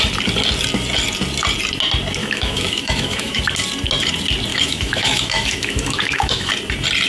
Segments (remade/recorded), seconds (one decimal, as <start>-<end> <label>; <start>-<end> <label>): 0.0-2.2 recorded; 2.2-3.4 remade; 3.4-4.5 recorded; 4.5-6.5 remade; 6.5-7.1 recorded